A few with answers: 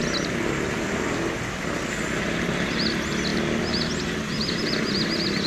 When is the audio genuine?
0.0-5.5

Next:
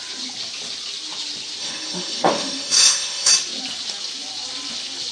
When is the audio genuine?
0.0-1.6; 3.3-5.1

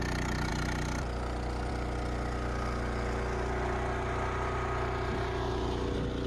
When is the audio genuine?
0.0-6.3

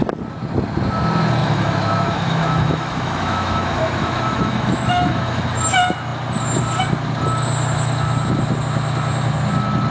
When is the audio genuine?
0.0-1.4; 5.4-9.9

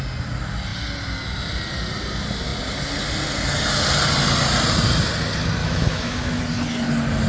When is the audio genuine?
0.0-5.6; 6.4-7.3

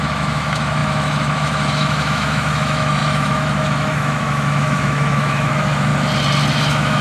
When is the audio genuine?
5.9-6.5

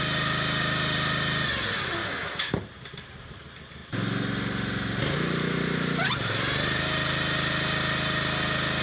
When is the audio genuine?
0.0-2.0; 2.5-8.8

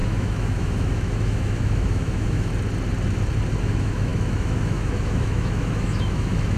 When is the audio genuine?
2.5-3.6